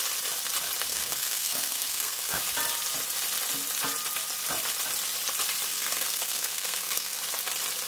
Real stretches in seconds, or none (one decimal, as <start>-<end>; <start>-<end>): 0.0-0.9; 2.4-5.7; 7.2-7.9